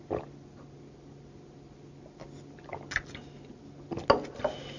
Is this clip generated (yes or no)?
no